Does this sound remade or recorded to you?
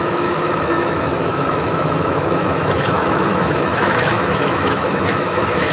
remade